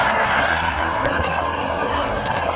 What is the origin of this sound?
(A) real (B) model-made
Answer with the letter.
B